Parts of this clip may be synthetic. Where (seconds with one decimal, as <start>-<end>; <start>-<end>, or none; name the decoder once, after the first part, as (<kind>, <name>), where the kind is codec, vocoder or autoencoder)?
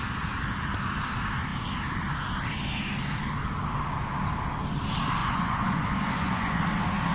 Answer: 5.2-6.6 (vocoder, Vocos)